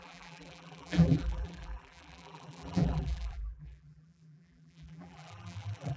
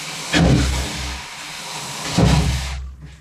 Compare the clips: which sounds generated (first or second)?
first